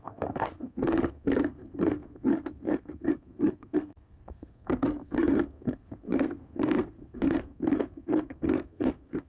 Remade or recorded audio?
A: remade